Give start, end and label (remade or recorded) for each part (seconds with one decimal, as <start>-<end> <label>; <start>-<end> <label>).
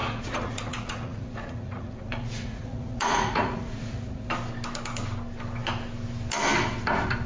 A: 0.0-4.3 remade; 4.3-7.3 recorded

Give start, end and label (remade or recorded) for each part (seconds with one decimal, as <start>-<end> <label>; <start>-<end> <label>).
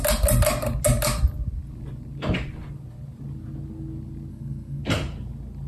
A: 0.0-4.3 recorded; 4.3-4.8 remade; 4.8-5.7 recorded